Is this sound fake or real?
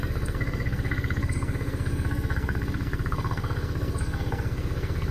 fake